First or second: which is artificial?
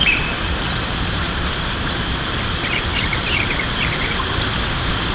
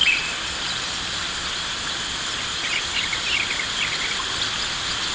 first